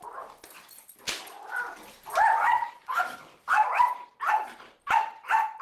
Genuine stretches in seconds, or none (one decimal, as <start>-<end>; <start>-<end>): 0.0-2.4; 3.5-5.6